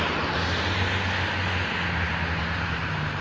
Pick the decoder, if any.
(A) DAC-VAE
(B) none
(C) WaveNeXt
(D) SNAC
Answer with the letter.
B